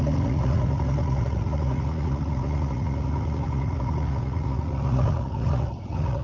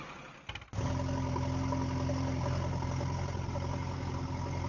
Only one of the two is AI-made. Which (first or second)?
first